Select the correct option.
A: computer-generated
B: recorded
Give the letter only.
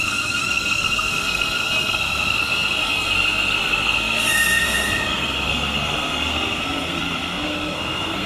A